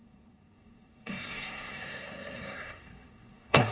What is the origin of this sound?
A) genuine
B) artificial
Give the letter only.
B